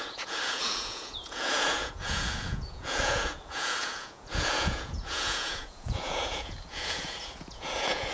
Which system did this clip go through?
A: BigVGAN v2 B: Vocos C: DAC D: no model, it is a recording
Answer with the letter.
B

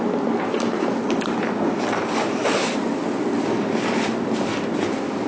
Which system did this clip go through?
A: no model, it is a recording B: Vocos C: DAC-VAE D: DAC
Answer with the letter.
A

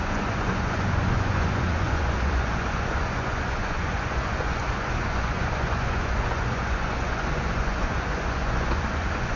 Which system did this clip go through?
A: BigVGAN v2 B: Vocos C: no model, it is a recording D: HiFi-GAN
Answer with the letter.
B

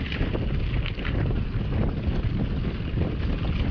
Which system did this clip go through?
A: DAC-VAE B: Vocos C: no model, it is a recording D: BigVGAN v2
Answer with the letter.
C